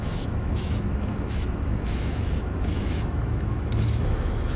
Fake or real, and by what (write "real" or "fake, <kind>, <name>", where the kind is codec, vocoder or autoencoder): fake, autoencoder, DAC-VAE